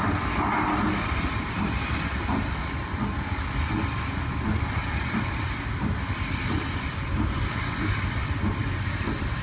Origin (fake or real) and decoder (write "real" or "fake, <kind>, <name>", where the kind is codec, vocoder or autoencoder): real